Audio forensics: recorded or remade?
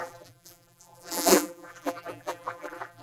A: remade